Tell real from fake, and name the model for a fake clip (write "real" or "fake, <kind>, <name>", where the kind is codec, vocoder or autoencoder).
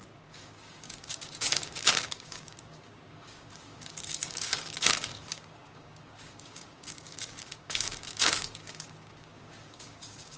fake, codec, DAC